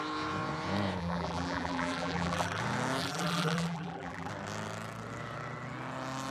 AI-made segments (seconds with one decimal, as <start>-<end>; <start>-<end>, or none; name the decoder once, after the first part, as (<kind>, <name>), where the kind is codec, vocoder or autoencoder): 1.0-2.6 (vocoder, BigVGAN v2); 3.0-4.3